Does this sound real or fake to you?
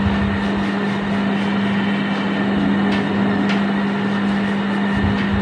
real